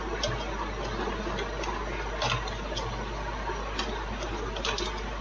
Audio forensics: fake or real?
real